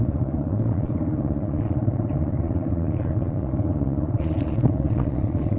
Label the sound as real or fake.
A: fake